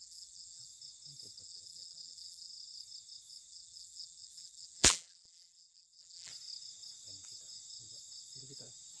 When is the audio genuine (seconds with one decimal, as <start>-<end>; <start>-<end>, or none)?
0.7-1.4; 2.5-3.5; 6.3-9.0